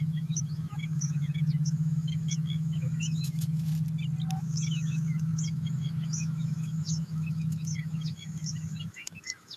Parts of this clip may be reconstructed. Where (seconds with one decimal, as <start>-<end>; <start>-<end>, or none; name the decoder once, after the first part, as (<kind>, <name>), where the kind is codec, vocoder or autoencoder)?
0.0-3.7 (autoencoder, DAC-VAE); 4.3-9.6